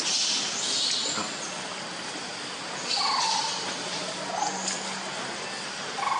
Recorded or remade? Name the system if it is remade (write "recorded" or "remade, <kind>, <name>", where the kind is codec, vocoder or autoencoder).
recorded